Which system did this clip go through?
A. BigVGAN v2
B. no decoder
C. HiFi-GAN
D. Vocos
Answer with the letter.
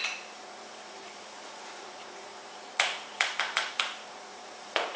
D